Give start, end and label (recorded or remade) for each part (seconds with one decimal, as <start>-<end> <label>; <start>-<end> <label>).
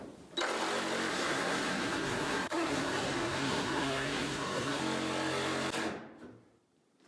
0.0-1.1 recorded; 1.1-4.8 remade; 4.8-7.1 recorded